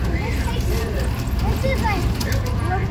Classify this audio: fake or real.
real